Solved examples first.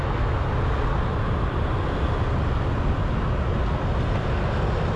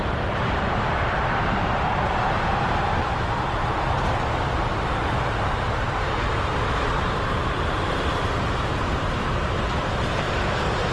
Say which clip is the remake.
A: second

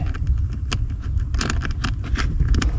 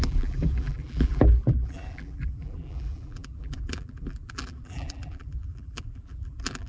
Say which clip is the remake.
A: second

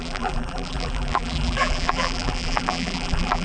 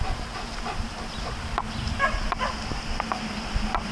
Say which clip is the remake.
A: first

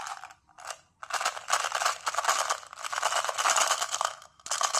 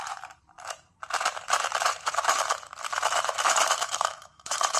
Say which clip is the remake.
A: second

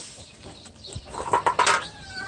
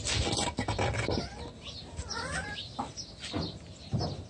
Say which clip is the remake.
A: first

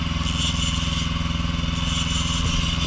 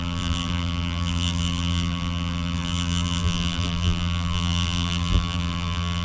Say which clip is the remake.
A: second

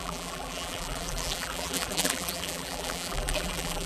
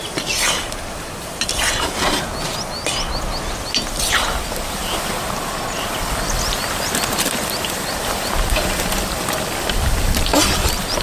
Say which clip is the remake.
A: first